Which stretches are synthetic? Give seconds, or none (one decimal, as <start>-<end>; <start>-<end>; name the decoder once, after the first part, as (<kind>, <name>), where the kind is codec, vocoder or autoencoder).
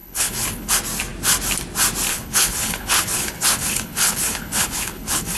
0.0-0.7 (codec, HILCodec); 2.1-5.4